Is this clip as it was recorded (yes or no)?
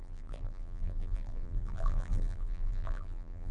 no